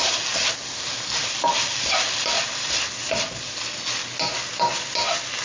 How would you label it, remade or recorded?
recorded